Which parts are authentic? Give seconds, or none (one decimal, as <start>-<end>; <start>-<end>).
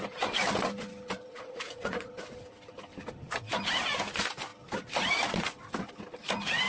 0.0-1.3; 2.1-6.7